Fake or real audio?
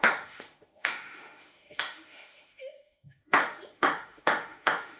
fake